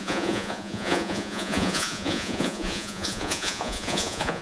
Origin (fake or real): fake